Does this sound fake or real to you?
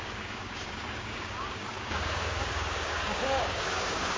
fake